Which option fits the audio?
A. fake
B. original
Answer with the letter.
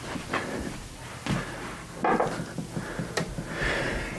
B